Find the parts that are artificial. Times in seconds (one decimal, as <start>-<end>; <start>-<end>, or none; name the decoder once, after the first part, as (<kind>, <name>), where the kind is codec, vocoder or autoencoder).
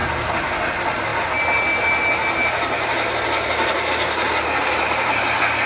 none